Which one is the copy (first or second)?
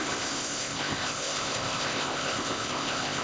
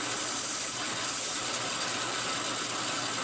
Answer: first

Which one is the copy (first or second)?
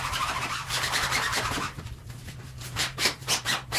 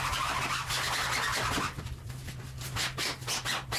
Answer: first